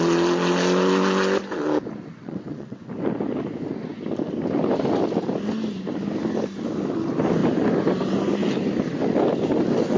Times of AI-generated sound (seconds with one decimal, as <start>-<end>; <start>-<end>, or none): 2.1-2.9